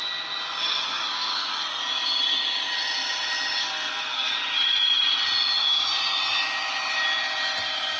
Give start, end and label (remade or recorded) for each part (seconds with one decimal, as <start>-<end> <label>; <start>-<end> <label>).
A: 0.0-0.6 recorded; 0.6-1.8 remade; 1.8-3.6 recorded; 3.6-4.3 remade; 4.3-8.0 recorded